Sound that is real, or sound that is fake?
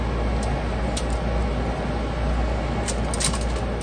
real